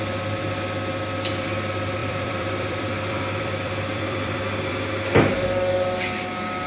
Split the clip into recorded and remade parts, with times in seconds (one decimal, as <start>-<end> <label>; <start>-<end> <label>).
0.0-2.0 recorded; 2.0-4.7 remade; 4.7-6.7 recorded